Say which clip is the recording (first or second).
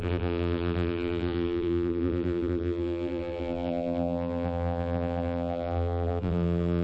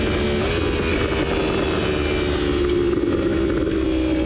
second